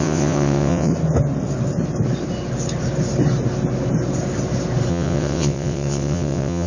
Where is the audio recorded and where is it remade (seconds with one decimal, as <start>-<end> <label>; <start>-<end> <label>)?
0.0-0.9 remade; 0.9-4.9 recorded; 4.9-6.7 remade